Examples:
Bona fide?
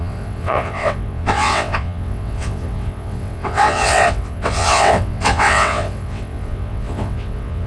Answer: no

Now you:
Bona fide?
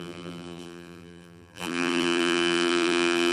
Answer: no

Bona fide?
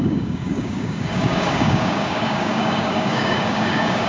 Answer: no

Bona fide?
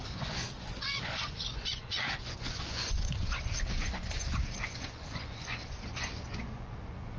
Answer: no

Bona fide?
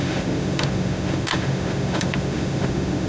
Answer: no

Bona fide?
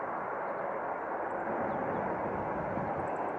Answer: yes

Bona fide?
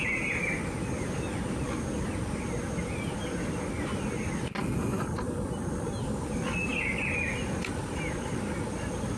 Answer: yes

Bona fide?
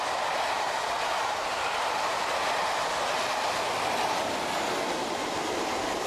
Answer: yes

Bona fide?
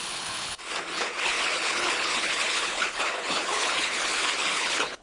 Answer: no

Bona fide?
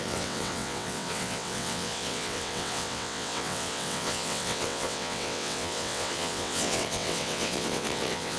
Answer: no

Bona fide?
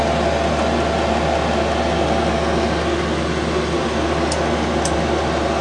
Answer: yes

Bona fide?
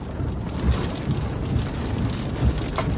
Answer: yes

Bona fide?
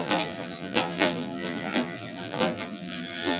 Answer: no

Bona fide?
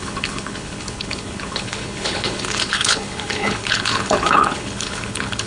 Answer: no